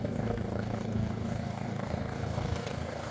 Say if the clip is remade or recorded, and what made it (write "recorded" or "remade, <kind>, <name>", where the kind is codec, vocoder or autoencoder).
remade, codec, DAC